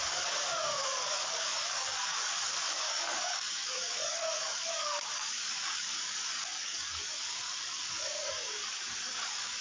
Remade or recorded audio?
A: remade